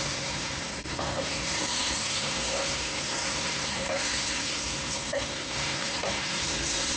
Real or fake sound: fake